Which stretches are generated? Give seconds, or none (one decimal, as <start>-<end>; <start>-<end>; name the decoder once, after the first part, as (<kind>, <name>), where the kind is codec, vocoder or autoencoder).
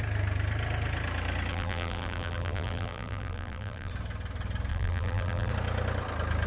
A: 1.5-3.9 (vocoder, BigVGAN v2); 4.7-5.5